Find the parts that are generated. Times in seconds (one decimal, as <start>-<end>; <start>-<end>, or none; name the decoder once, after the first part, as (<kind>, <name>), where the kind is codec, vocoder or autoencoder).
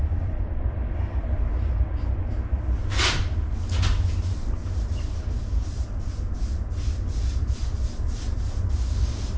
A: 0.0-0.6 (vocoder, BigVGAN v2)